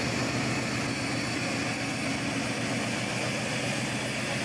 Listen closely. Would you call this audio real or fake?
real